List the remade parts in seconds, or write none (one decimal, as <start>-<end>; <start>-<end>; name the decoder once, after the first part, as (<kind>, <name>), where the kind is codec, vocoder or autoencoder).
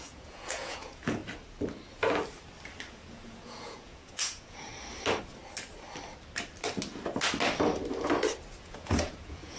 0.0-1.2 (vocoder, Vocos); 2.9-4.7; 8.6-9.6